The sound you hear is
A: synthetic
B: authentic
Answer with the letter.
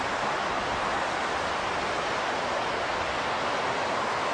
B